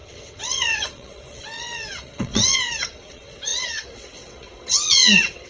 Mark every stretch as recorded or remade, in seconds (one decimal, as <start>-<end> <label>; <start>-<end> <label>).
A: 0.0-5.5 remade